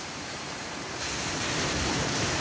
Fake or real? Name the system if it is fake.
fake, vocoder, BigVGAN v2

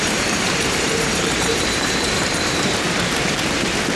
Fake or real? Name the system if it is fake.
fake, vocoder, BigVGAN v2